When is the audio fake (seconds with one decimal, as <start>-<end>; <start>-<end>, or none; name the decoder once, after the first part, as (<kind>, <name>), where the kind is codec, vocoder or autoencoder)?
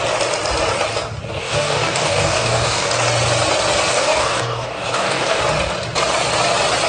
1.4-2.9 (codec, DAC); 3.9-5.4